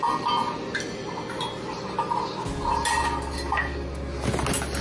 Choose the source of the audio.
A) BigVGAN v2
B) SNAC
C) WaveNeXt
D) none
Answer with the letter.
D